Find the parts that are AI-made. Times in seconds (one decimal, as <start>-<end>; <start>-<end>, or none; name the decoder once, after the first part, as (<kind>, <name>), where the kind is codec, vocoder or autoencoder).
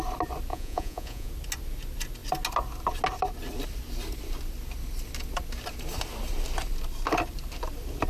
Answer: 0.5-1.3 (vocoder, Vocos)